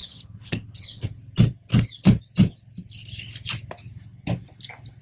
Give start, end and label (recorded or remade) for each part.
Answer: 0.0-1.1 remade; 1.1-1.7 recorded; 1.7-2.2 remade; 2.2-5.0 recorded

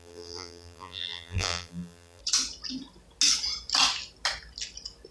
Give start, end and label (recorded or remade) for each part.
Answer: 0.0-2.2 remade; 2.2-5.1 recorded

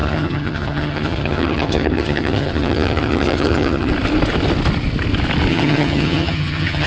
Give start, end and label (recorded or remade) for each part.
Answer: 0.0-3.9 remade; 3.9-5.5 recorded; 5.5-6.9 remade

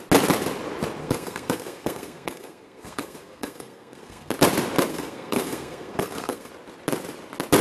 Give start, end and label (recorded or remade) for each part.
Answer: 0.0-1.0 recorded; 1.0-4.3 remade; 4.3-4.9 recorded; 4.9-6.5 remade; 6.5-7.6 recorded